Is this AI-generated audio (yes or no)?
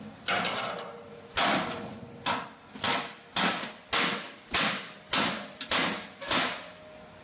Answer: no